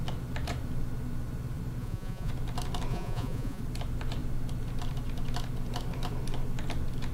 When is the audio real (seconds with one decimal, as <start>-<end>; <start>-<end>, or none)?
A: 0.0-1.8; 2.3-2.9; 3.6-7.1